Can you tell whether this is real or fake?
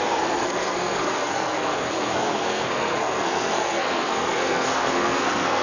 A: fake